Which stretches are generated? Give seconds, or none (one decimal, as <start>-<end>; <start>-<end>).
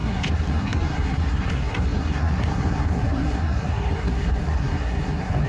0.0-5.5